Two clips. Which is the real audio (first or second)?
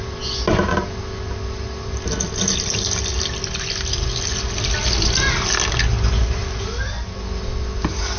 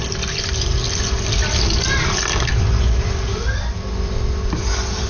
first